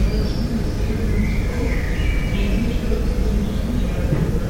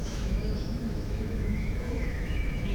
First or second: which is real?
first